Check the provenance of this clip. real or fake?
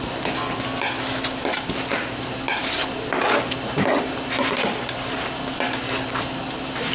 real